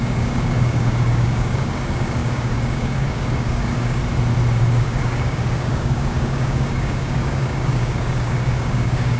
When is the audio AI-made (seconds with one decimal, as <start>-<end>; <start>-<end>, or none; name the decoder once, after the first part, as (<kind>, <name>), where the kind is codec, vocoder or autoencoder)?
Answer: 0.0-4.0 (codec, DAC); 4.6-9.2